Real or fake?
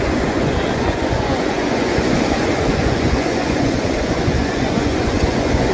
fake